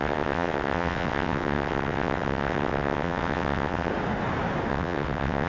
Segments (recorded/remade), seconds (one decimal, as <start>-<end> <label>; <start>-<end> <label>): 0.0-3.9 remade; 3.9-4.7 recorded; 4.7-5.5 remade